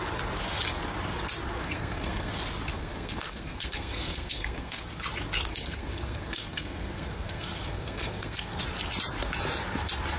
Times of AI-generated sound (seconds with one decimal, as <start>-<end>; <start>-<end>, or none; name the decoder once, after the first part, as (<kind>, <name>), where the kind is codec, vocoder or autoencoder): 1.6-2.3 (codec, SNAC); 2.7-4.8; 5.5-8.6